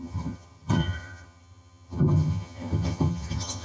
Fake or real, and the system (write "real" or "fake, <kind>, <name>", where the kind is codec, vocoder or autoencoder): fake, vocoder, HiFi-GAN